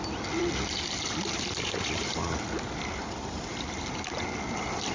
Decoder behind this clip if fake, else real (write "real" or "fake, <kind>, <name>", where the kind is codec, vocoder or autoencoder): fake, vocoder, BigVGAN v2